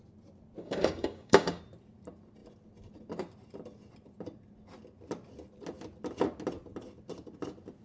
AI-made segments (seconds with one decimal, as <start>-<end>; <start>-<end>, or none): 0.6-1.6